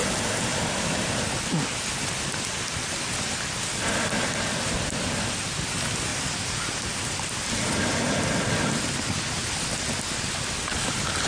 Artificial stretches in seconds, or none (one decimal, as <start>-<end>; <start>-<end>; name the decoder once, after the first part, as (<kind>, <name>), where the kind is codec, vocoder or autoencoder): none